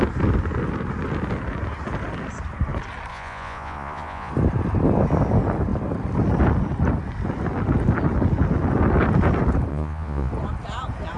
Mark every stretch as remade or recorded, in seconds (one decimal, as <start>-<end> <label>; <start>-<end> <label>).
0.0-3.1 recorded; 3.1-4.3 remade; 4.3-9.7 recorded; 9.7-10.3 remade; 10.3-11.2 recorded